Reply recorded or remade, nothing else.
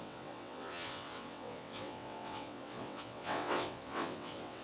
remade